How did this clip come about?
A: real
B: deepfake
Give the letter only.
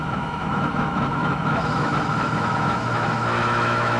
B